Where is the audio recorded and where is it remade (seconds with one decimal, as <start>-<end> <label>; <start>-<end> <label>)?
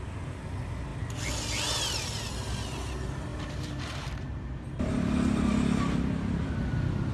0.0-3.3 recorded; 3.3-4.5 remade; 4.5-7.1 recorded